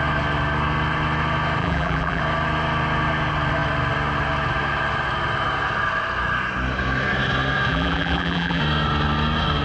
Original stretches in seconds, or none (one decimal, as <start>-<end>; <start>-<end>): 0.0-1.6; 2.2-7.7; 8.6-9.6